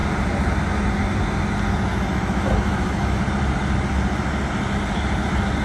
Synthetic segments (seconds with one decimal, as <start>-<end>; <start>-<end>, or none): 1.9-3.2